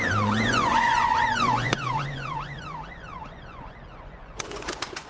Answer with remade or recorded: remade